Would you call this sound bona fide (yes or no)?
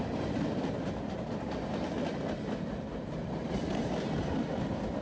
yes